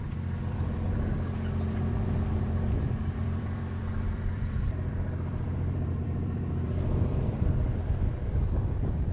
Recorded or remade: remade